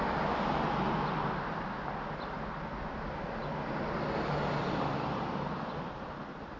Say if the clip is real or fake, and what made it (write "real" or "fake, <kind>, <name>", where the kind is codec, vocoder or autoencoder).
real